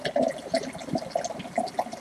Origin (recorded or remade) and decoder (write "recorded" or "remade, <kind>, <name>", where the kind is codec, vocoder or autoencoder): recorded